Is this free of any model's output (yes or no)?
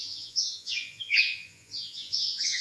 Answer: no